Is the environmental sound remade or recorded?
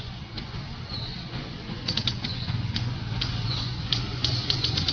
remade